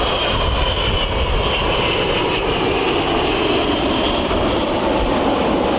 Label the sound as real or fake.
fake